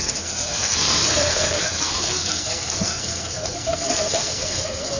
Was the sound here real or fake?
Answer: fake